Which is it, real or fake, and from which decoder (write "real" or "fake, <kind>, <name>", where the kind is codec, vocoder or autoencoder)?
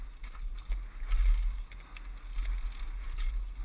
real